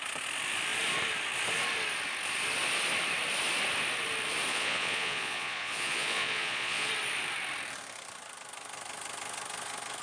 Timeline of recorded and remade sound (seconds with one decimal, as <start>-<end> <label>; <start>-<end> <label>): 0.0-4.5 recorded; 4.5-6.9 remade; 6.9-10.0 recorded